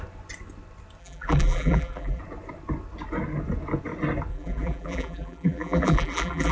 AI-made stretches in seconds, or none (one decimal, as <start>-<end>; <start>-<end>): 1.0-2.2; 4.3-6.5